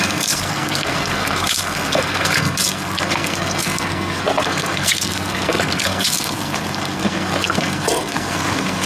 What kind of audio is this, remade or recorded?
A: remade